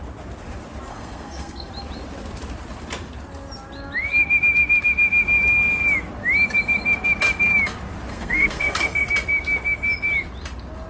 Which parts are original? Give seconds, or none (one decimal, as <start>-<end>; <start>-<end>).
0.0-0.9; 1.7-8.1; 9.1-10.9

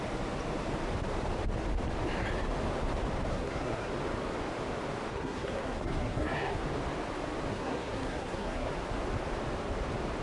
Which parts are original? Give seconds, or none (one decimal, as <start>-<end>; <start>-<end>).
0.0-3.3; 3.9-5.1; 6.6-7.5; 8.7-10.2

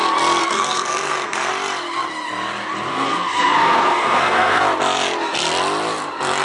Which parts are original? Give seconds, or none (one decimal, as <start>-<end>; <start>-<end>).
0.0-0.4; 1.5-2.9; 4.6-6.4

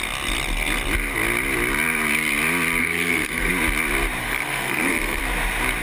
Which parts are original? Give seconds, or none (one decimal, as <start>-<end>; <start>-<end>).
0.0-2.8; 3.5-4.2; 5.2-5.8

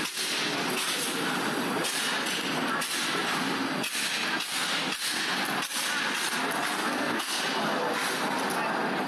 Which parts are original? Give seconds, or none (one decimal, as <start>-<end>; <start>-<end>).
0.0-6.8; 7.4-9.1

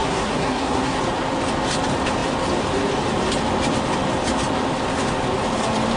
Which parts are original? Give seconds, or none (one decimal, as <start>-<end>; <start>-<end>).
1.0-6.0

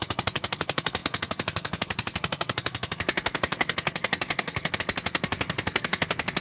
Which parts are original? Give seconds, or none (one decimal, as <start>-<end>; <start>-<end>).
none